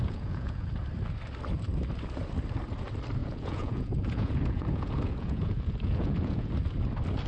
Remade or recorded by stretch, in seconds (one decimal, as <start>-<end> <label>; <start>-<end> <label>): 0.0-0.7 remade; 0.7-3.2 recorded; 3.2-6.5 remade; 6.5-7.3 recorded